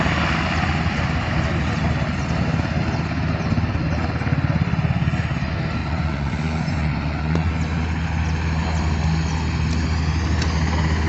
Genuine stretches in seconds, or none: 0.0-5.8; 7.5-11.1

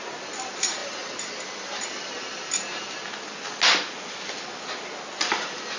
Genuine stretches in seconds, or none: 0.0-5.8

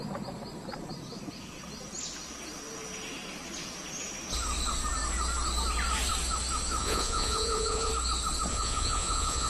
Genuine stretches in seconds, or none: 0.0-6.8; 7.9-8.5